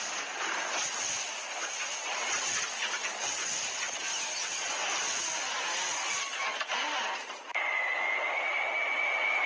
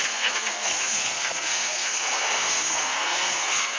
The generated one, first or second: second